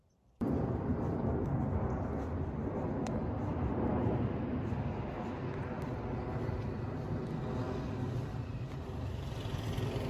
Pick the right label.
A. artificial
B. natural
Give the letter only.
B